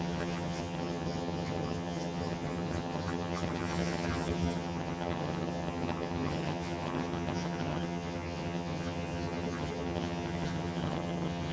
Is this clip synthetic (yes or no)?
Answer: yes